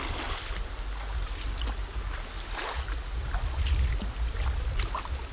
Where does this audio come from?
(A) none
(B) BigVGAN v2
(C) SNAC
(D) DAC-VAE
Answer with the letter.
A